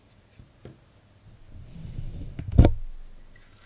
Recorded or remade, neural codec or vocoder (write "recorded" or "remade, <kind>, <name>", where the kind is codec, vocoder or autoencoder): recorded